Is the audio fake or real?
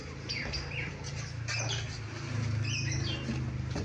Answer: real